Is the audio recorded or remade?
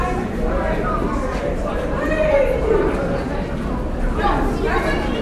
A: recorded